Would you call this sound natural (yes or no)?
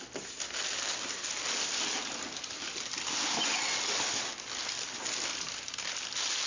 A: yes